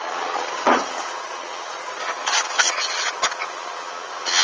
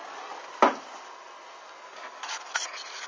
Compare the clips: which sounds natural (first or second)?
second